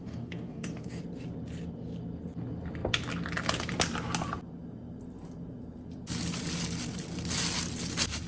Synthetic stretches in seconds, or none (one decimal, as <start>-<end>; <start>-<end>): 0.0-1.0